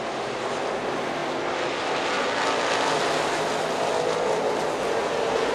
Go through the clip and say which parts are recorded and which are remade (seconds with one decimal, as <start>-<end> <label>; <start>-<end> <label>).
0.0-5.5 recorded